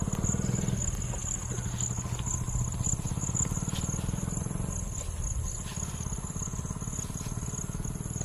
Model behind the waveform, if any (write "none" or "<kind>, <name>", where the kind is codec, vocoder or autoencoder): none